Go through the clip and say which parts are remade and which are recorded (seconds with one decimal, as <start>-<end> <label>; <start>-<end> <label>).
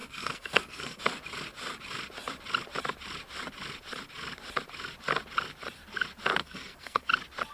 0.0-1.0 remade; 1.0-6.4 recorded; 6.4-7.1 remade; 7.1-7.5 recorded